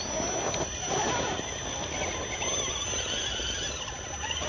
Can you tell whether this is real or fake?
real